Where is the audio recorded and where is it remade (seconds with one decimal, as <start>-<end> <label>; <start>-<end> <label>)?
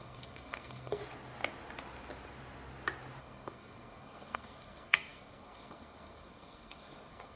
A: 0.0-1.0 remade; 1.0-3.2 recorded; 3.2-7.4 remade